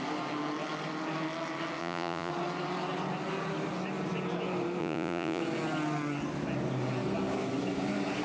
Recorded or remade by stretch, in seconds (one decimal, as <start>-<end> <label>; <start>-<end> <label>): 0.0-1.8 recorded; 1.8-2.3 remade; 2.3-4.8 recorded; 4.8-5.4 remade; 5.4-8.2 recorded